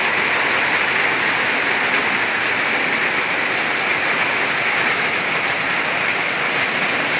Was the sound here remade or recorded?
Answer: recorded